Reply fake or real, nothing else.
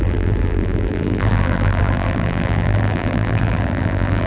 fake